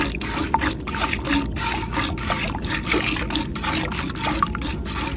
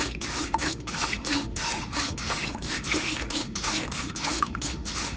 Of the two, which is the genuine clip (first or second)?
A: first